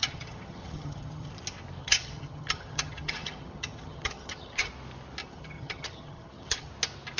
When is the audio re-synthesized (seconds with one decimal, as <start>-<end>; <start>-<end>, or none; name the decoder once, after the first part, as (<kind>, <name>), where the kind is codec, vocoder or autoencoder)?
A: 0.0-1.3 (vocoder, HiFi-GAN); 1.8-4.7; 5.2-6.7